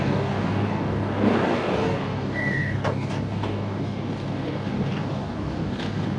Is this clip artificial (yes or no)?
yes